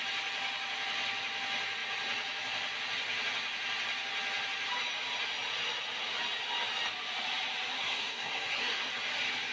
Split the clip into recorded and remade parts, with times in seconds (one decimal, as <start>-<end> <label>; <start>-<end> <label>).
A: 0.0-7.7 recorded; 7.7-8.9 remade; 8.9-9.5 recorded